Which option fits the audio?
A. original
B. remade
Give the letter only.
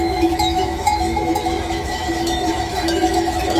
B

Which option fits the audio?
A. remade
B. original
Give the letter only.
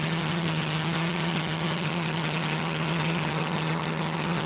A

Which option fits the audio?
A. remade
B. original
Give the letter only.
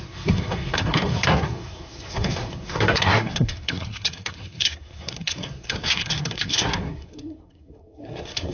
A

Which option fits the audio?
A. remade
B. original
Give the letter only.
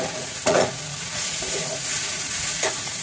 A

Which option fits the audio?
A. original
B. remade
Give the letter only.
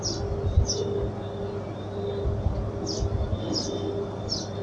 A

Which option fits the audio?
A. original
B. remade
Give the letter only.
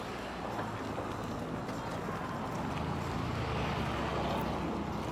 A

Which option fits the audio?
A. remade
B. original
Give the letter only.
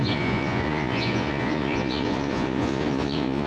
A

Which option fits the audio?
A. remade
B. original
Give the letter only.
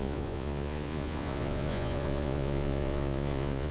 A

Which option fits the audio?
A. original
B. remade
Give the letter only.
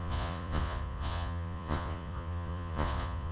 B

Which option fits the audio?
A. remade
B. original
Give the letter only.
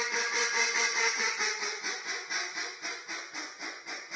A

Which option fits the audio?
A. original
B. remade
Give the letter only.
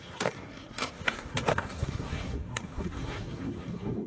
B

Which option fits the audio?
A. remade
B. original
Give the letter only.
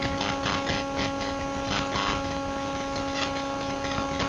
B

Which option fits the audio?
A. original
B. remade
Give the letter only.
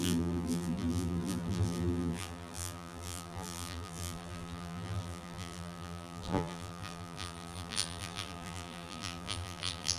B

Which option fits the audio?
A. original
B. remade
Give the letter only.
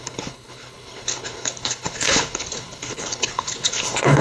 B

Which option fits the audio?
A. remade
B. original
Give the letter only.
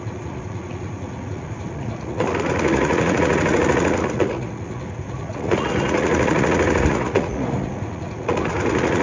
A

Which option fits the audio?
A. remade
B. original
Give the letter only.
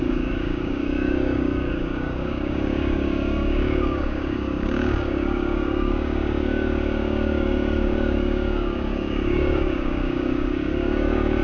A